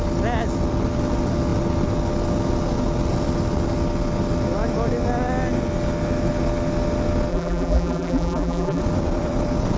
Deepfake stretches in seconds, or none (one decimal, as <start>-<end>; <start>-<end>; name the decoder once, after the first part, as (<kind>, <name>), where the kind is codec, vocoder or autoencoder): 7.3-8.8 (vocoder, BigVGAN v2)